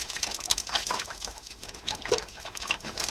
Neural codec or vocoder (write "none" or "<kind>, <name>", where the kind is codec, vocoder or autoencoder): autoencoder, DAC-VAE